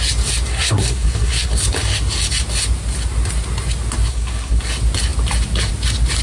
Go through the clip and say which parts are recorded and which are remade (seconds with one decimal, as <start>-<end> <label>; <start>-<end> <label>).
0.0-0.5 recorded; 0.5-1.6 remade; 1.6-4.1 recorded; 4.1-4.6 remade; 4.6-6.2 recorded